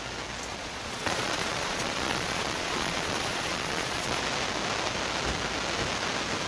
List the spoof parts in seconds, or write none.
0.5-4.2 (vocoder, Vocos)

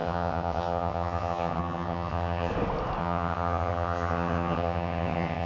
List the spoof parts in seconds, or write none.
0.0-2.5 (vocoder, HiFi-GAN); 3.0-5.5